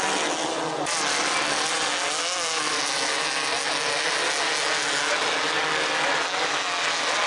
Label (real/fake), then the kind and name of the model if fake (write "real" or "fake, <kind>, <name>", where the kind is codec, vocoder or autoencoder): real